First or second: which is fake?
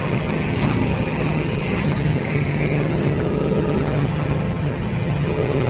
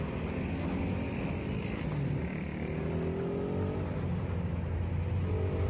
first